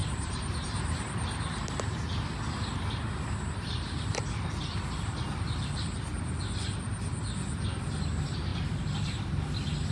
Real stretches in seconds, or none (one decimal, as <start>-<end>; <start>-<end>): 1.4-8.5; 9.3-9.9

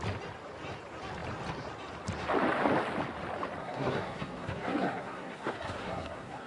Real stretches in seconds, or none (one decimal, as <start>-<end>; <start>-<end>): 0.0-3.6

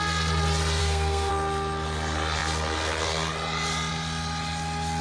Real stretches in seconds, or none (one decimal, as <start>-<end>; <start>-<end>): 0.0-0.8; 1.3-5.0

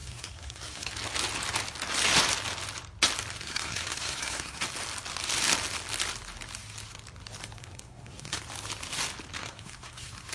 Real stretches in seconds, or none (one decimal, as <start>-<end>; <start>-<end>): 0.9-3.4; 4.6-7.6; 8.4-9.4